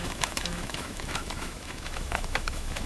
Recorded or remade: remade